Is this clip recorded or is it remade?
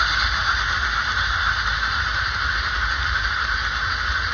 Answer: recorded